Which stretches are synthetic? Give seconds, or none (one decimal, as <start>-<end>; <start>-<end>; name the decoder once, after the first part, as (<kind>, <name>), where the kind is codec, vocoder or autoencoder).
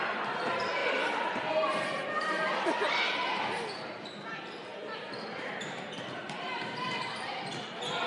0.8-1.5 (vocoder, BigVGAN v2); 4.7-7.4